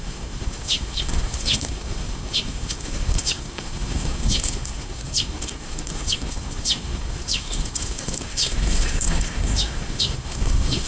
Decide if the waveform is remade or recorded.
remade